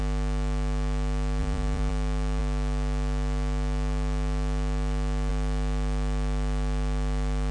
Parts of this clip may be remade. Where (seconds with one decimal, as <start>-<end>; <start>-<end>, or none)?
1.4-1.9

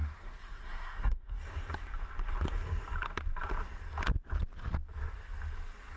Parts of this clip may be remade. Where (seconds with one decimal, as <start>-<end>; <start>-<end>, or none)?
0.0-1.4

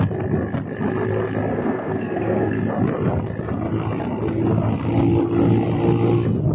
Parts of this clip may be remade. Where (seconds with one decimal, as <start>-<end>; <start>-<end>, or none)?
1.5-2.6

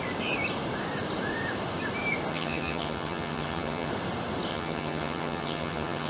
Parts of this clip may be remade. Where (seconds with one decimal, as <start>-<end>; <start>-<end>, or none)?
2.3-3.9; 4.5-6.1

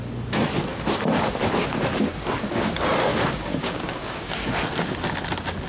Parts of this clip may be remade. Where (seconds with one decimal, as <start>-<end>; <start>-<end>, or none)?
3.1-4.3